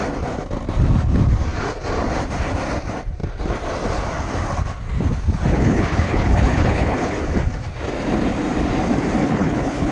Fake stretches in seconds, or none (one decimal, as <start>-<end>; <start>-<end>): 5.5-7.2; 9.2-9.9